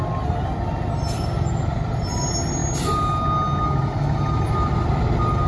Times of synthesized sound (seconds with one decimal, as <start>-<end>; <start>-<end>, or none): none